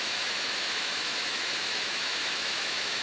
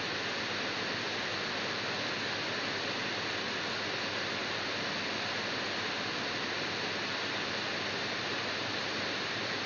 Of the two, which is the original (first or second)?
second